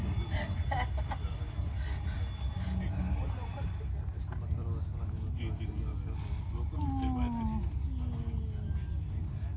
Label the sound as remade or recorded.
recorded